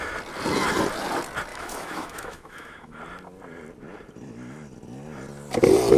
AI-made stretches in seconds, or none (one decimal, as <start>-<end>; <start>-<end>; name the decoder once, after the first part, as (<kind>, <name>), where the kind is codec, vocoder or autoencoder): 1.5-3.0 (autoencoder, DAC-VAE)

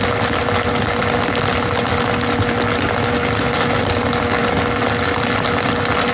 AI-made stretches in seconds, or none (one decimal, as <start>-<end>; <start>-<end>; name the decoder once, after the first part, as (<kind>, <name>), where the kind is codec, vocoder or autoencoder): none

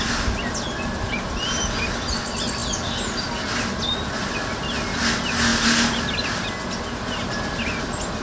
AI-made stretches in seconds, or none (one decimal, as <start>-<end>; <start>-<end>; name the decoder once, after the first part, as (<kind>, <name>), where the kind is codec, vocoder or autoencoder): none

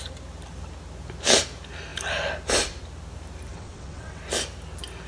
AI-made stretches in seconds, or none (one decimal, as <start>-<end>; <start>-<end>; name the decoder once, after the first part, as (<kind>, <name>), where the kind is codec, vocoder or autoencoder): 3.5-4.2 (vocoder, WaveNeXt)